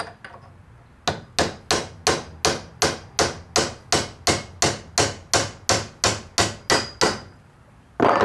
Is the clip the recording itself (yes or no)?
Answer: yes